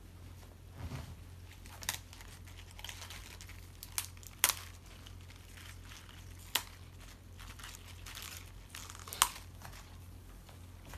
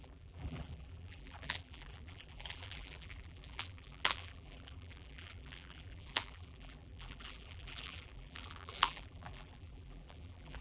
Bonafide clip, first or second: first